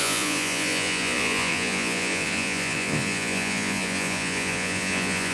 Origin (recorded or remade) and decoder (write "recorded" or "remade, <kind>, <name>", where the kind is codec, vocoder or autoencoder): remade, vocoder, Vocos